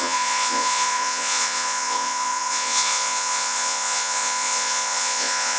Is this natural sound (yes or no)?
no